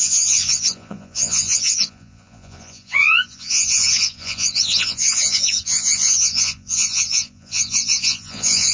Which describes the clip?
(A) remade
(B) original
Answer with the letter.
A